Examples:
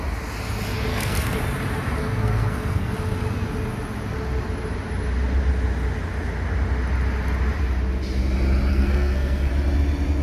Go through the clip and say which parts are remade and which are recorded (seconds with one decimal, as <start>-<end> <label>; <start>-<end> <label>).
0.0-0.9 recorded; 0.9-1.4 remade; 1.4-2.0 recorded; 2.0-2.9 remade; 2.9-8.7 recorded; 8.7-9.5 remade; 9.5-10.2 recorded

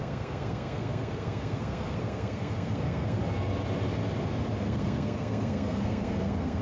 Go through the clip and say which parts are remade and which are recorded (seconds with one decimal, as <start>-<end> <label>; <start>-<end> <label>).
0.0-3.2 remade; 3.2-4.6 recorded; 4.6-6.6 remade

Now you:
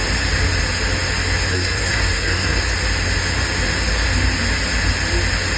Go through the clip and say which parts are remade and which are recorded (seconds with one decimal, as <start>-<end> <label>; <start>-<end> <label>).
0.0-1.5 recorded; 1.5-2.6 remade; 2.6-5.6 recorded

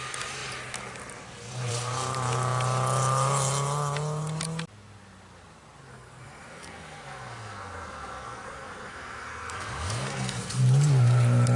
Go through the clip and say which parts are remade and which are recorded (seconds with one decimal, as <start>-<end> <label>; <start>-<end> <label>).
0.0-5.9 recorded; 5.9-10.6 remade; 10.6-11.6 recorded

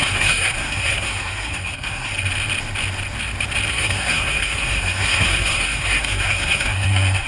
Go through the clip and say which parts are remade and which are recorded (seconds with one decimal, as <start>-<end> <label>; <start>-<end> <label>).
0.0-2.1 remade; 2.1-3.7 recorded; 3.7-7.3 remade

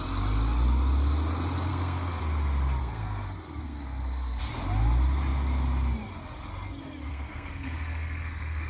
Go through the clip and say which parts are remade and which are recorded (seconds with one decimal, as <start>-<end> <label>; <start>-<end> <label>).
0.0-1.7 recorded; 1.7-2.2 remade; 2.2-2.8 recorded; 2.8-4.4 remade; 4.4-7.1 recorded; 7.1-8.7 remade

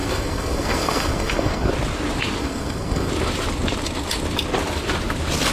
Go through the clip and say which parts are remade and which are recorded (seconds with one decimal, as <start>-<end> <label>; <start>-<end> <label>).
0.0-1.7 remade; 1.7-2.4 recorded; 2.4-3.1 remade; 3.1-5.5 recorded

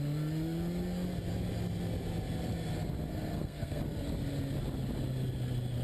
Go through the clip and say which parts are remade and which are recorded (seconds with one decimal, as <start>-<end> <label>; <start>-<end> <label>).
0.0-3.1 recorded; 3.1-3.8 remade; 3.8-5.8 recorded